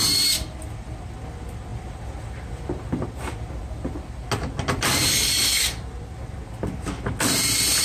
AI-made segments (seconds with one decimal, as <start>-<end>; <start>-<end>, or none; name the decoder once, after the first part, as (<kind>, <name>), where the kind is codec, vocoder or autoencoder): none